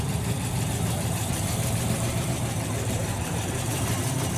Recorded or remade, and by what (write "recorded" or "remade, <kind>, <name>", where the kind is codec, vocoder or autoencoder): remade, vocoder, BigVGAN v2